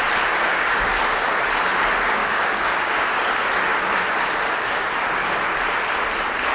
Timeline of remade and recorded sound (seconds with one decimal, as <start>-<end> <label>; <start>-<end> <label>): 0.0-0.5 recorded; 0.5-1.0 remade; 1.0-2.2 recorded; 2.2-2.9 remade; 2.9-6.5 recorded